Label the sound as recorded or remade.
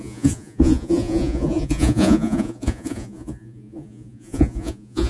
remade